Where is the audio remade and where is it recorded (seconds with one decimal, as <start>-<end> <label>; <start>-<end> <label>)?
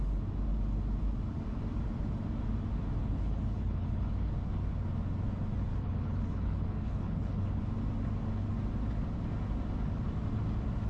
0.0-3.0 recorded; 3.0-4.3 remade; 4.3-5.7 recorded; 5.7-7.6 remade; 7.6-10.9 recorded